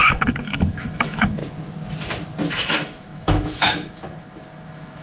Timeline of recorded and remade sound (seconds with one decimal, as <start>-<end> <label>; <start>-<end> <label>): 0.0-1.4 remade; 1.4-2.5 recorded; 2.5-5.0 remade